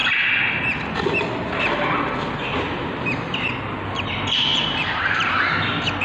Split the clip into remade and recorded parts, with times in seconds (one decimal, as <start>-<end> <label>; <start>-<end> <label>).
0.0-4.5 recorded; 4.5-5.3 remade; 5.3-6.0 recorded